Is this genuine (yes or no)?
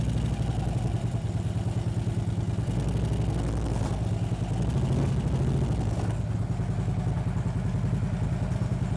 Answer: yes